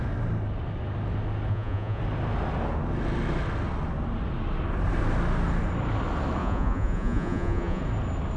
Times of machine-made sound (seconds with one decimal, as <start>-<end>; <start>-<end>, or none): 1.5-2.0; 6.4-7.8